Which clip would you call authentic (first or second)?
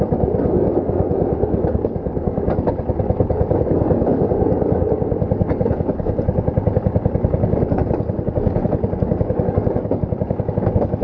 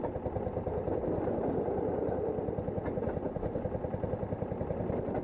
second